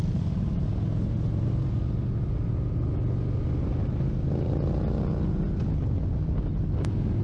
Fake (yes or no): no